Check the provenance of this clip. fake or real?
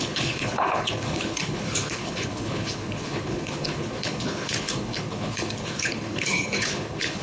fake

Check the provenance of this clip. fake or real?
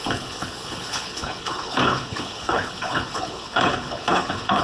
fake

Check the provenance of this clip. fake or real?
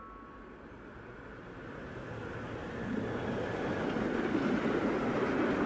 real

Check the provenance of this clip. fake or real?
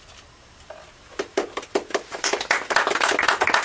real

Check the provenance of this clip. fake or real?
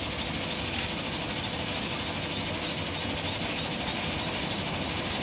real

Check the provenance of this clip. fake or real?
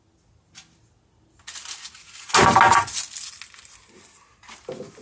real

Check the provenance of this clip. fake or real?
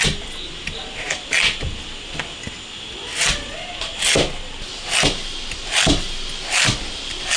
real